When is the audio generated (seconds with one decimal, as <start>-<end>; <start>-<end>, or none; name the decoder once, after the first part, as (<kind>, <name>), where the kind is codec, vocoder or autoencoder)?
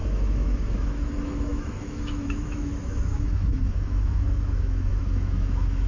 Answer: 0.0-5.9 (autoencoder, DAC-VAE)